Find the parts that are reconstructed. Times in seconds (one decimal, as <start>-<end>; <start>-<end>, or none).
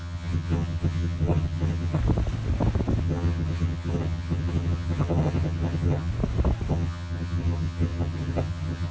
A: 0.0-2.0; 3.0-6.1; 6.7-8.9